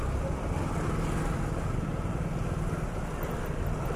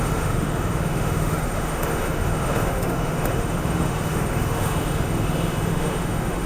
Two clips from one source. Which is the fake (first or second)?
second